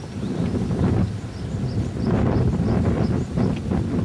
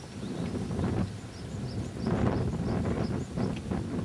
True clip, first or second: second